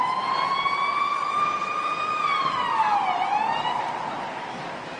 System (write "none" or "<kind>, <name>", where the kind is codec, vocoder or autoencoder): none